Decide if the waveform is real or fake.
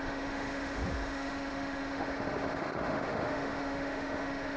fake